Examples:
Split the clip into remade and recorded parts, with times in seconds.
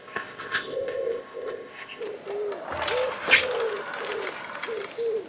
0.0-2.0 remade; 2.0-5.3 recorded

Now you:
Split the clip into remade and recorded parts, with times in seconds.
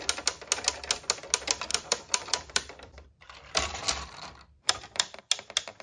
0.0-1.7 recorded; 1.7-5.2 remade; 5.2-5.8 recorded